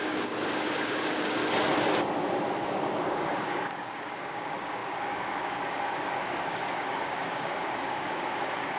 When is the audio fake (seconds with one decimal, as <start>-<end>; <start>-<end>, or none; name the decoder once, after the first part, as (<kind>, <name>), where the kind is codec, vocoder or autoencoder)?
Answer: 0.0-1.4 (codec, DAC); 3.1-8.8